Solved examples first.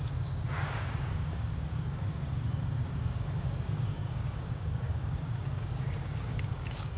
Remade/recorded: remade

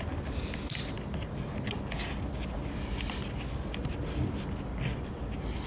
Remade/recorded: recorded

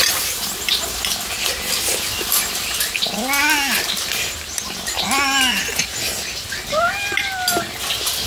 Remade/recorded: recorded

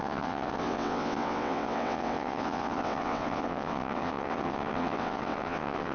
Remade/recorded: remade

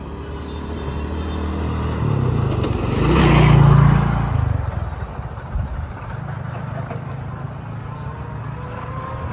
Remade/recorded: recorded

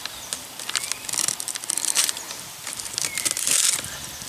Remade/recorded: recorded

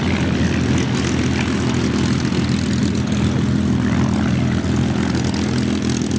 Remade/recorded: recorded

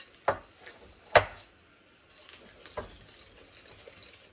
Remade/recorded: recorded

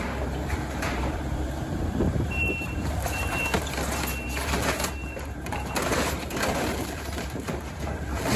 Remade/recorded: remade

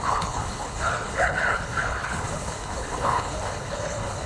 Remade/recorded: remade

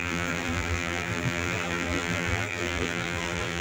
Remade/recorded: remade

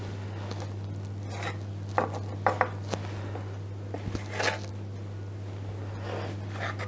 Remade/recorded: recorded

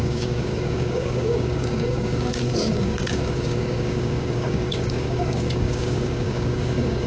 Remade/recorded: remade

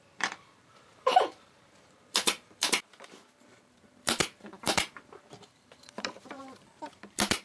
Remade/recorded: remade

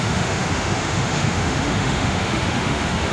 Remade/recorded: remade